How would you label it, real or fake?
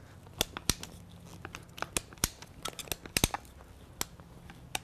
real